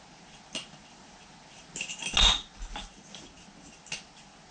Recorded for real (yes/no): yes